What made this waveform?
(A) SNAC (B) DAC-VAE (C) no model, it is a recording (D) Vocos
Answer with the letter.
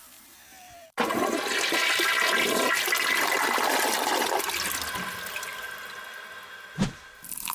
C